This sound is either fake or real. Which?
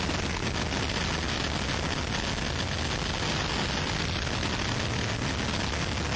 real